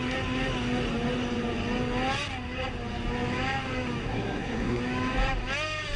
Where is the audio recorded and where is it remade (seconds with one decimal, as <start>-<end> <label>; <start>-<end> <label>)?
0.0-4.0 recorded; 4.0-4.8 remade; 4.8-6.0 recorded